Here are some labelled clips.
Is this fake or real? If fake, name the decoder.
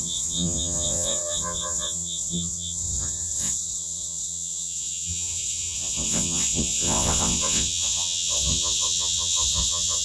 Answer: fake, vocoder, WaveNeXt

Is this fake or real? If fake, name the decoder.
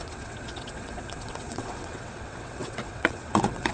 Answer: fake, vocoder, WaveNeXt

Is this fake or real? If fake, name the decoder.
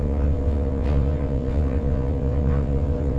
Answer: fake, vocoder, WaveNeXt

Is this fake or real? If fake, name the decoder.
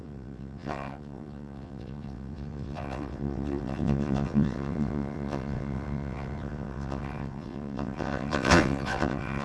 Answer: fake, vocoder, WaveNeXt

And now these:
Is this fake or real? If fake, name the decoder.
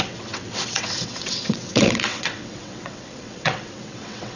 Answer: fake, vocoder, WaveNeXt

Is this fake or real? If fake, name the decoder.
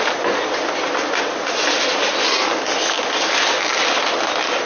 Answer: real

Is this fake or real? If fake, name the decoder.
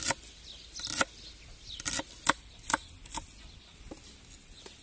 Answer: real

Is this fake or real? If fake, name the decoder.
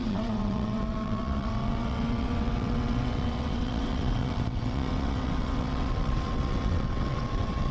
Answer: fake, vocoder, WaveNeXt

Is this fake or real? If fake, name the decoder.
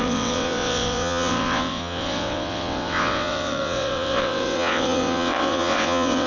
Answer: fake, vocoder, WaveNeXt